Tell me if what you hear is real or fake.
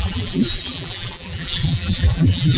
fake